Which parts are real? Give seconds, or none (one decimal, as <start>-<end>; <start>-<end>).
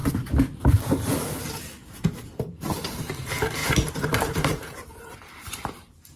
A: 0.0-0.6; 1.1-2.5